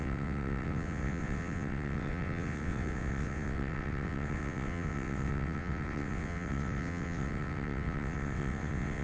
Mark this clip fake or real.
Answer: fake